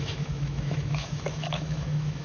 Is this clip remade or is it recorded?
remade